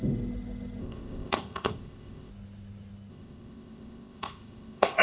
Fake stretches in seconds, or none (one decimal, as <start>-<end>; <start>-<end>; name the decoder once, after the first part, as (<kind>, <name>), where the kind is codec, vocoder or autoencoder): 0.8-2.3 (codec, ZipCodec); 3.1-5.0